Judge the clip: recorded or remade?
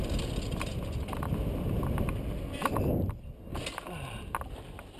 recorded